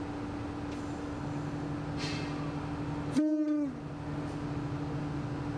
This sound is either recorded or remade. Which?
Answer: recorded